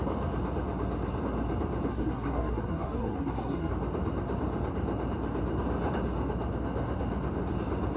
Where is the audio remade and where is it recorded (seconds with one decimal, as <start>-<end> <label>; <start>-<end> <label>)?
0.0-1.9 recorded; 1.9-3.7 remade; 3.7-8.0 recorded